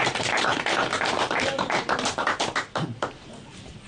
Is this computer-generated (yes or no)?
yes